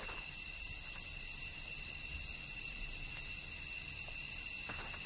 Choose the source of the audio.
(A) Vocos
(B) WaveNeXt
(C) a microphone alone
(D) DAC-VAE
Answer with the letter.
C